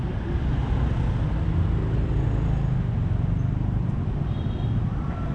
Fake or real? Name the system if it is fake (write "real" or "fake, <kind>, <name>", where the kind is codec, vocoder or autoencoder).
real